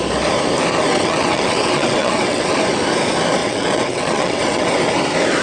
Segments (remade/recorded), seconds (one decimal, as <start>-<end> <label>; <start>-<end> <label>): 0.0-0.9 recorded; 0.9-2.6 remade; 2.6-3.4 recorded; 3.4-4.7 remade; 4.7-5.4 recorded